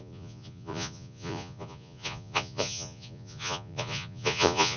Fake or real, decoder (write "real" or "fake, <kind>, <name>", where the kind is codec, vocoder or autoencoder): fake, vocoder, Vocos